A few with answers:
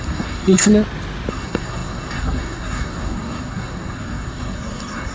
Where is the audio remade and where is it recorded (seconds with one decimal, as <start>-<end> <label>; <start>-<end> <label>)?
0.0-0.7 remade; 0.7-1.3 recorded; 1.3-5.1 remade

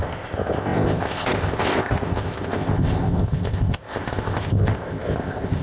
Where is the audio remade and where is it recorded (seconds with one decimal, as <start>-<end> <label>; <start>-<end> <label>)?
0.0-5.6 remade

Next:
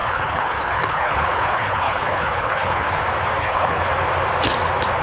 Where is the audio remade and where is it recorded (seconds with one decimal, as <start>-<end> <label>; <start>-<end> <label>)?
0.0-3.0 remade; 3.0-3.4 recorded; 3.4-3.9 remade; 3.9-5.0 recorded

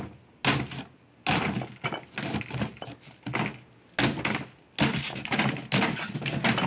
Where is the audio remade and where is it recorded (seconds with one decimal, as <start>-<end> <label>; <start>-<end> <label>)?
0.0-6.7 recorded

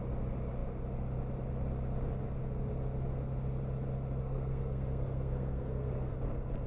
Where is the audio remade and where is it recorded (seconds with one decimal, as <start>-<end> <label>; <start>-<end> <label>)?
0.0-4.2 recorded; 4.2-6.2 remade; 6.2-6.7 recorded

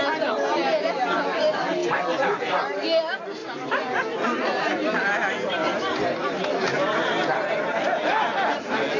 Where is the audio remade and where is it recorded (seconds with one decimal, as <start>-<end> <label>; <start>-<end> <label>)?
0.0-9.0 recorded

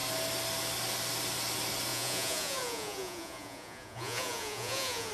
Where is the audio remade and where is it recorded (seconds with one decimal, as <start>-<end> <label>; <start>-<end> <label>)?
0.0-1.9 recorded; 1.9-5.1 remade

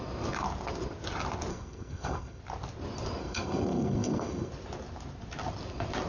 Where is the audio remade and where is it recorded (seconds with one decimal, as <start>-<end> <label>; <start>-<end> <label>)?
0.0-1.5 recorded; 1.5-2.4 remade; 2.4-3.2 recorded; 3.2-4.5 remade; 4.5-6.1 recorded